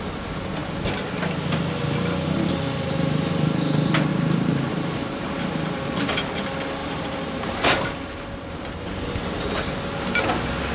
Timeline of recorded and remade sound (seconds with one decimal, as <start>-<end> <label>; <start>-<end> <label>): 0.0-4.1 recorded; 4.1-6.1 remade; 6.1-6.8 recorded; 6.8-9.0 remade; 9.0-10.7 recorded